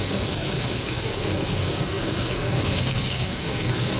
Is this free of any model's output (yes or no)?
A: no